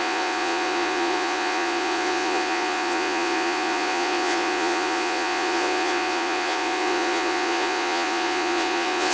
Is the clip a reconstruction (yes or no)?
yes